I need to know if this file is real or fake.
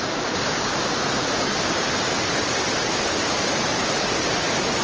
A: real